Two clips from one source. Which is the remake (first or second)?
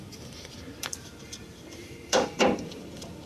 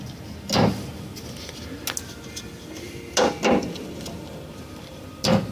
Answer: first